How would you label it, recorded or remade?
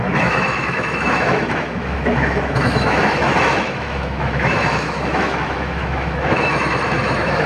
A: remade